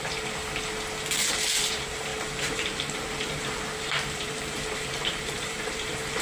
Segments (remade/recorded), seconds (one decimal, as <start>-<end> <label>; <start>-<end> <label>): 0.0-0.4 remade; 0.4-1.2 recorded; 1.2-6.2 remade